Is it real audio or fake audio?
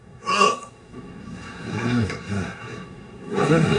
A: fake